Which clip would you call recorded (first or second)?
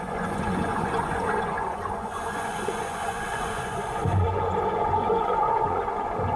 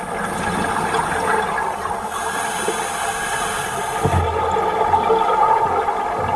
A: second